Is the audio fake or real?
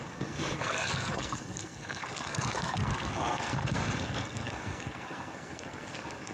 fake